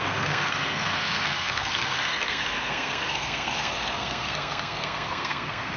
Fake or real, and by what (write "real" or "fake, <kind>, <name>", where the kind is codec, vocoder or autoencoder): fake, codec, SNAC